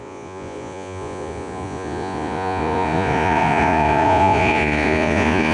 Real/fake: fake